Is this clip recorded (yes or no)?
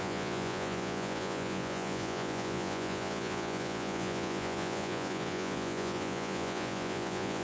no